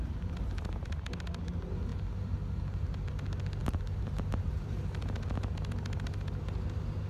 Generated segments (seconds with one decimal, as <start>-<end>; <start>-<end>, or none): none